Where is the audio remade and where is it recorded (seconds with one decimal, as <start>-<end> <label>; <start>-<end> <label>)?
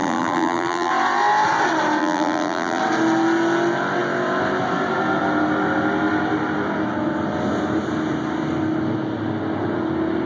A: 0.0-0.9 remade; 0.9-2.0 recorded; 2.0-2.8 remade; 2.8-10.3 recorded